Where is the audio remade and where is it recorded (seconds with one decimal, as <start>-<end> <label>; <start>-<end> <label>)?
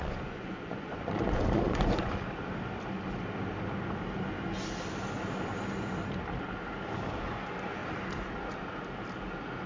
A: 0.0-2.2 remade; 2.2-7.2 recorded; 7.2-7.8 remade; 7.8-9.7 recorded